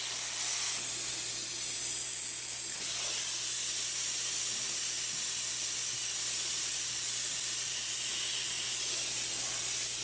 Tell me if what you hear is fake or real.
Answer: real